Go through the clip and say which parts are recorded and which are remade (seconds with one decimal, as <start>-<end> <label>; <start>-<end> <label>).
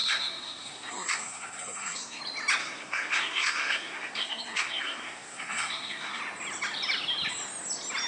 0.0-2.2 remade; 2.2-2.6 recorded; 2.6-6.2 remade; 6.2-8.1 recorded